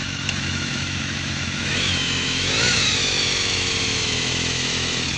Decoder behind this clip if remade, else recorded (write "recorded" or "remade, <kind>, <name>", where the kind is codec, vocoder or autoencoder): remade, autoencoder, DAC-VAE